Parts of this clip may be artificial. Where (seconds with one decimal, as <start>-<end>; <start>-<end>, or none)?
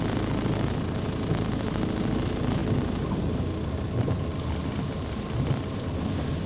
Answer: none